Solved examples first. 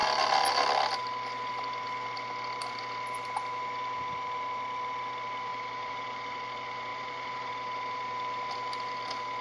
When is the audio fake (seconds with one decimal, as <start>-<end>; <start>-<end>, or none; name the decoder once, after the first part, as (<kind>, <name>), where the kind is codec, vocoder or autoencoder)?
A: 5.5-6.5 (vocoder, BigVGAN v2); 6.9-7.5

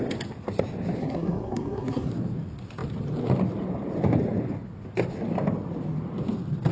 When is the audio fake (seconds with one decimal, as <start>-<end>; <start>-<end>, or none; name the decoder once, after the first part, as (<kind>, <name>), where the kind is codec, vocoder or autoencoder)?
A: 1.0-2.1 (codec, SNAC)

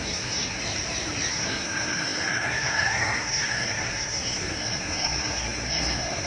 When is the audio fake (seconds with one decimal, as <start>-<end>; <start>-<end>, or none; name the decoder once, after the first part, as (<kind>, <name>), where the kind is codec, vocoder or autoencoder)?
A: 0.0-0.6 (codec, SNAC); 1.3-6.3

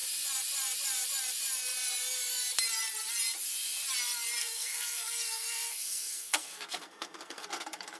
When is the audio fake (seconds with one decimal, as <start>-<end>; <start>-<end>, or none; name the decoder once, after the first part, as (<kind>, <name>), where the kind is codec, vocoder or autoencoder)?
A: 4.4-8.0 (codec, SNAC)

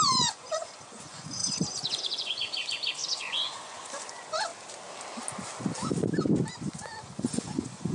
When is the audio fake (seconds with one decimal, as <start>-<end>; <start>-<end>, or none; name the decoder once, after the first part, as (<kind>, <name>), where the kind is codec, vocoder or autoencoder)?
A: 0.0-4.5 (vocoder, Vocos); 6.6-7.9

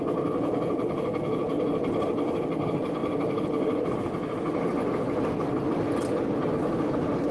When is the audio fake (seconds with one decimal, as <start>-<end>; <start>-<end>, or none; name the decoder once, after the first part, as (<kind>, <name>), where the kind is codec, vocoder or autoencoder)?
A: 3.0-3.9 (vocoder, BigVGAN v2)

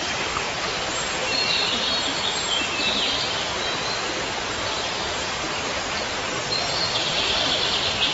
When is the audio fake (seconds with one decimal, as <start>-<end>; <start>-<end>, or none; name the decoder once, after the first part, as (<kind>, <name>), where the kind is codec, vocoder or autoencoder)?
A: none